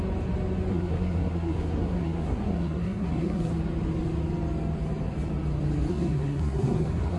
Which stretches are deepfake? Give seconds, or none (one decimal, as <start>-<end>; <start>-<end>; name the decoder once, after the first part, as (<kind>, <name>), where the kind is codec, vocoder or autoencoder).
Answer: 0.7-3.5 (codec, SNAC); 5.9-7.2